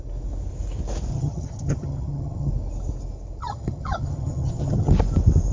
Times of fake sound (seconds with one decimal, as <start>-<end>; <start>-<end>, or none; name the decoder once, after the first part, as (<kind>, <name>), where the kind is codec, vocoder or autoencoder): 1.1-2.5 (vocoder, HiFi-GAN); 3.4-4.9